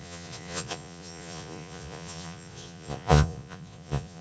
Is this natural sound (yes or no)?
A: no